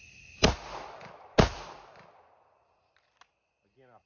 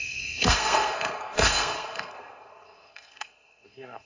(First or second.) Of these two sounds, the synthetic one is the second